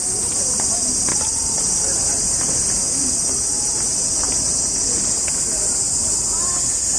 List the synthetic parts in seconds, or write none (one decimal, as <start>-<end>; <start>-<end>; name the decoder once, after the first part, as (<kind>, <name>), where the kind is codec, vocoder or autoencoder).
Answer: 1.1-2.2 (vocoder, BigVGAN v2); 3.0-4.7